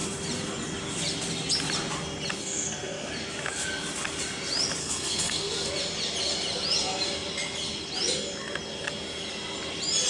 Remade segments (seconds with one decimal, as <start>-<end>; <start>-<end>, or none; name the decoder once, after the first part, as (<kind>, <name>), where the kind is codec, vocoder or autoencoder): 2.4-3.1 (codec, SNAC); 4.8-5.7